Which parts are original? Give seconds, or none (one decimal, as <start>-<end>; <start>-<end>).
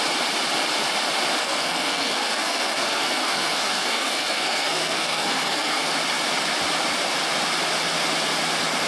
0.0-1.4; 5.9-8.9